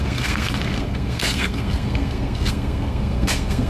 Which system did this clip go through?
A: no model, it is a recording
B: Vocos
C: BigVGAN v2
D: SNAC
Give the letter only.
D